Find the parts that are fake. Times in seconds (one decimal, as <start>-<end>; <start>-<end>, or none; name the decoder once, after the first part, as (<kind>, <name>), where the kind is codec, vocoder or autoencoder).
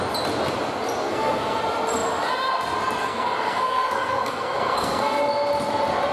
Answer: 1.0-1.6 (codec, SNAC); 3.0-5.2